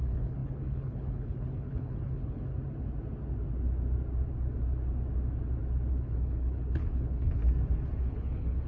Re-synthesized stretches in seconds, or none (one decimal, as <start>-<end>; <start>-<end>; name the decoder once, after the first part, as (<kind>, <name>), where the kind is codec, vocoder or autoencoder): 0.0-2.5 (codec, HILCodec); 5.9-7.4; 8.0-8.7